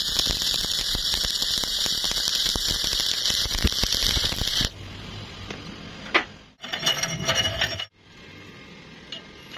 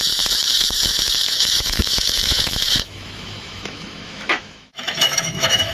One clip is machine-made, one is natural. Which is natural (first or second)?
first